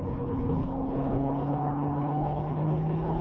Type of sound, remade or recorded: remade